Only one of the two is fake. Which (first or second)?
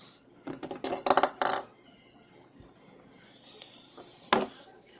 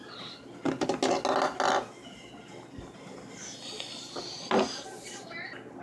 first